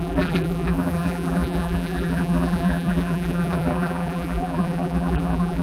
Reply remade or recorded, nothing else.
remade